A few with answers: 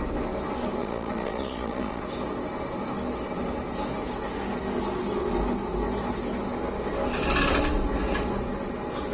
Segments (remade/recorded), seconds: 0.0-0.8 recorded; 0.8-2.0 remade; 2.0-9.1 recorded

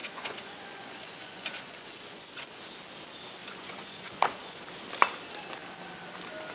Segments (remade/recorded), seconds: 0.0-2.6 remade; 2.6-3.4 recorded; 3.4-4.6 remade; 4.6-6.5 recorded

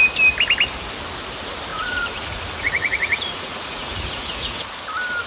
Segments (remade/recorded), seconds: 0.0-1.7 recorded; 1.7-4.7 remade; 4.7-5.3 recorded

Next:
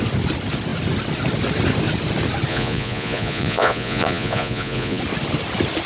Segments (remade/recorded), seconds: 0.0-2.5 recorded; 2.5-5.0 remade; 5.0-5.9 recorded